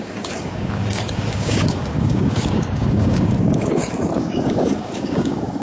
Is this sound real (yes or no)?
no